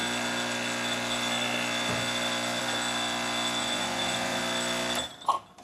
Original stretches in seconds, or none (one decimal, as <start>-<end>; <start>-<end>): 0.0-3.6; 4.4-5.6